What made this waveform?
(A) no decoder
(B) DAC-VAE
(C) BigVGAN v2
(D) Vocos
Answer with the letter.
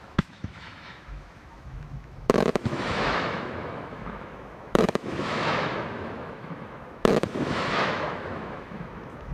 B